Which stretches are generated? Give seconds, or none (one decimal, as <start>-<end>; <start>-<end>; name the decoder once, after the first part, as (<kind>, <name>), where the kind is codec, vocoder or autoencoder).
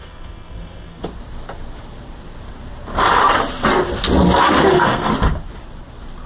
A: 0.0-1.0 (codec, SNAC); 4.5-5.1